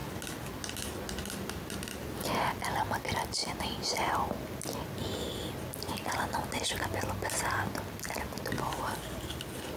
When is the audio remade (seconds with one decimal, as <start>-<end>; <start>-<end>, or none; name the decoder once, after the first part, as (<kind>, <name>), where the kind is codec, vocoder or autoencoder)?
none